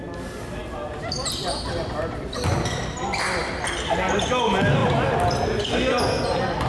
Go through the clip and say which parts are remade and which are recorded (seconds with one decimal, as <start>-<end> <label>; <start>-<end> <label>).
0.0-6.7 recorded